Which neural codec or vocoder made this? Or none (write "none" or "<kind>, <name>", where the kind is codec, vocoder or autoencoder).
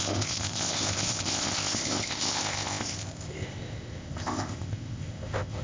codec, ZipCodec